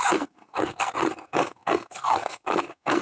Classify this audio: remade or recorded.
remade